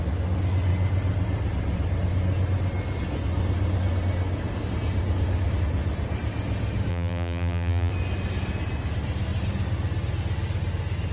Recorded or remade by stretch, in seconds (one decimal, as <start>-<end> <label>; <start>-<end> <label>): 0.0-6.9 recorded; 6.9-7.9 remade; 7.9-11.1 recorded